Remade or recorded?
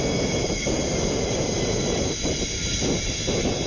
recorded